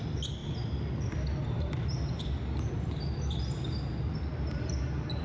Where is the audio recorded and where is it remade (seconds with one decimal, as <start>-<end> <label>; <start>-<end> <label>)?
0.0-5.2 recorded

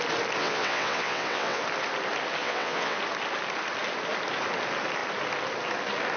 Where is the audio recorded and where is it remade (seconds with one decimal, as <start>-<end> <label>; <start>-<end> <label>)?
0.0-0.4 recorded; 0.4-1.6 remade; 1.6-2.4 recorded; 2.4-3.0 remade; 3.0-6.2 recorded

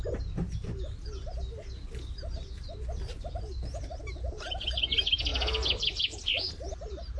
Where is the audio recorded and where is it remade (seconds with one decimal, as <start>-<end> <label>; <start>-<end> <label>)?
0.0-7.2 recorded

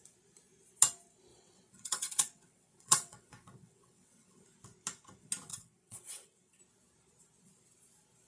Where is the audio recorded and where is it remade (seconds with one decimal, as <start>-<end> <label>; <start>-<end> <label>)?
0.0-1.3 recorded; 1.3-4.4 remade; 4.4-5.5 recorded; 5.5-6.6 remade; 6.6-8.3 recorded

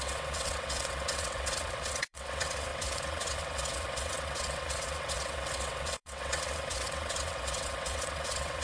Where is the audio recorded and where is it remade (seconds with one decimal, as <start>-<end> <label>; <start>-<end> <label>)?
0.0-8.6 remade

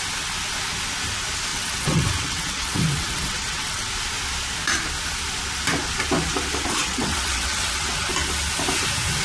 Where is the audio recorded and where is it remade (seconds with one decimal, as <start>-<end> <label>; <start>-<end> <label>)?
0.0-1.5 recorded; 1.5-3.9 remade; 3.9-6.8 recorded; 6.8-8.1 remade; 8.1-9.2 recorded

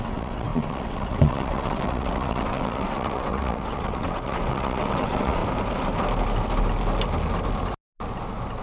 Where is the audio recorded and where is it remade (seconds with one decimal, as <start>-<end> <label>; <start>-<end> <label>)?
0.0-5.4 remade; 5.4-8.6 recorded